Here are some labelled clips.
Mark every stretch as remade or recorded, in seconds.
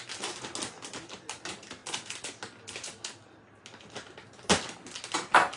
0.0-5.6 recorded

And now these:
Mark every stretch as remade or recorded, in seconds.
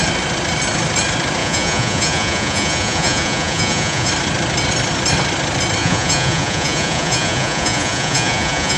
0.0-1.4 recorded; 1.4-4.1 remade; 4.1-5.8 recorded; 5.8-8.8 remade